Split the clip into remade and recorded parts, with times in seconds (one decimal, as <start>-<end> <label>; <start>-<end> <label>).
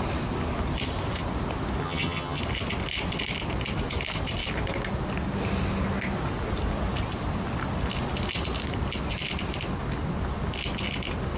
0.0-1.8 recorded; 1.8-2.4 remade; 2.4-11.4 recorded